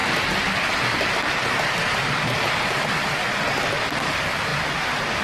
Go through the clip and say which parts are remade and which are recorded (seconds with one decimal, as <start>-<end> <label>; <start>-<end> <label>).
0.0-5.2 recorded

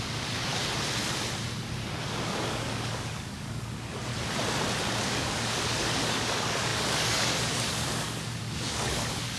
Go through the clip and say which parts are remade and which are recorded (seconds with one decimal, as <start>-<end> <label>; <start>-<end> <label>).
0.0-0.5 remade; 0.5-2.0 recorded; 2.0-4.1 remade; 4.1-5.0 recorded; 5.0-9.4 remade

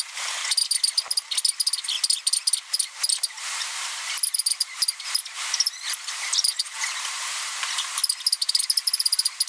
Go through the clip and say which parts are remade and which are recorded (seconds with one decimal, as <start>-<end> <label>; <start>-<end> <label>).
0.0-9.5 recorded

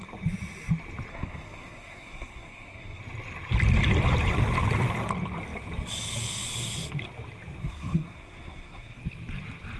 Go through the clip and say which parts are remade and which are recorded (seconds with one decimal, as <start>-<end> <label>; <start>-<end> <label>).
0.0-1.1 recorded; 1.1-3.0 remade; 3.0-7.6 recorded; 7.6-9.0 remade; 9.0-9.8 recorded

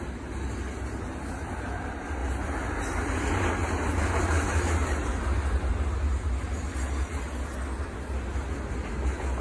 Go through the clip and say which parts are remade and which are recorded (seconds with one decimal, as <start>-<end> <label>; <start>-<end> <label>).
0.0-9.4 recorded